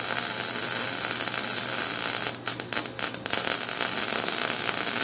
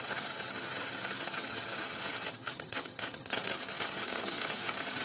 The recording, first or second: first